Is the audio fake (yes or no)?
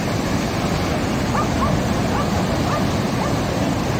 no